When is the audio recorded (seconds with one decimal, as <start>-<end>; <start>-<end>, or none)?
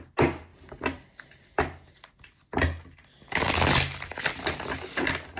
0.0-0.5; 1.2-5.4